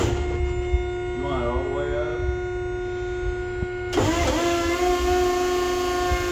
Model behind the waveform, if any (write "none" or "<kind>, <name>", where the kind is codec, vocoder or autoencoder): none